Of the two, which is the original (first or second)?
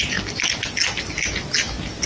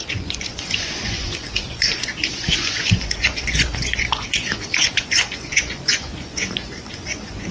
first